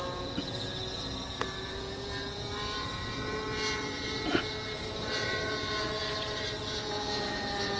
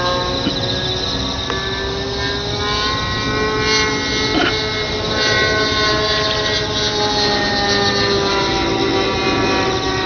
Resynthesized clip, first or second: first